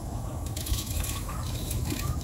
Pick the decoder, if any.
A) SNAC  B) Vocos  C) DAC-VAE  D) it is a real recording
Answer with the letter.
C